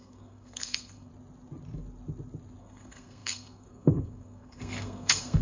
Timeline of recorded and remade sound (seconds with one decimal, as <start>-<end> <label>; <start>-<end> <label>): 0.0-1.1 remade; 1.1-2.6 recorded; 2.6-5.4 remade